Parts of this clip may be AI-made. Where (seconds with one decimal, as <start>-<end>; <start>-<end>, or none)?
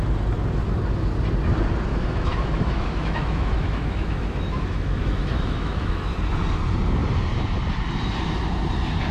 1.9-6.1